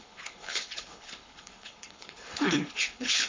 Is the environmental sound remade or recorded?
remade